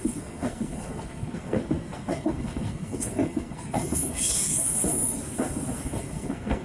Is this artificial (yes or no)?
yes